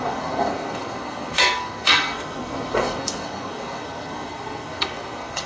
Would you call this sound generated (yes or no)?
yes